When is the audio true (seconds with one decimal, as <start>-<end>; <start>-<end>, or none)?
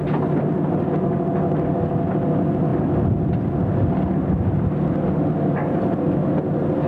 0.0-6.9